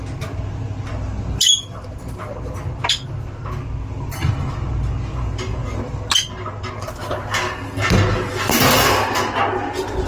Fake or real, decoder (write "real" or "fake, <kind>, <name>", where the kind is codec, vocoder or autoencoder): real